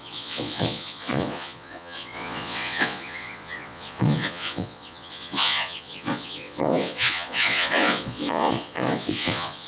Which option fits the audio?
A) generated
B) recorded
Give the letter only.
A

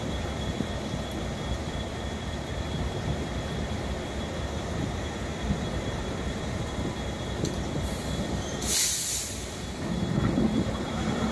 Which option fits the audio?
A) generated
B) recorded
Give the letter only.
A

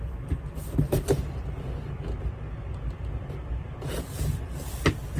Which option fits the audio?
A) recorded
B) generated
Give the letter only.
A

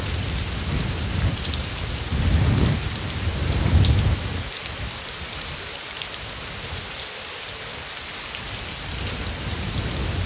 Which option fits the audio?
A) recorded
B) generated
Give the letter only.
A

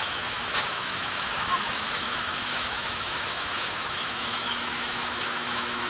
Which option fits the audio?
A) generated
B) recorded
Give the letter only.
A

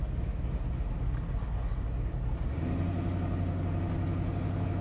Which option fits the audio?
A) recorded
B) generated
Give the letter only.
A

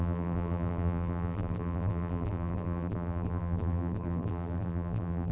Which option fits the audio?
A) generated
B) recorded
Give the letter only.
A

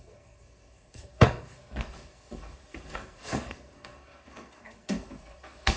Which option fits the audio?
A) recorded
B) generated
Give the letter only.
B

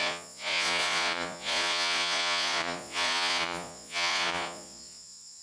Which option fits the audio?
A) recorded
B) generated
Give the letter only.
B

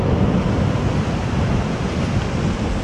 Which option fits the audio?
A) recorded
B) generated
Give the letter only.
A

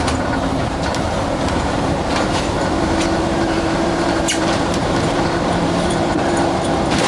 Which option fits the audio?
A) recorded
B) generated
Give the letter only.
B